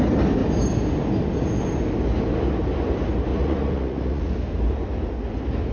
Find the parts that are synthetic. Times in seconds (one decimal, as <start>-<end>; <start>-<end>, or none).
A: 3.3-4.3